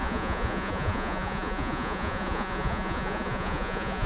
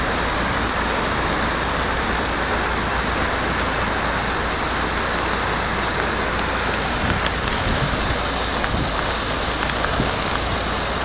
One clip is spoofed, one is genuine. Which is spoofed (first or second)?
first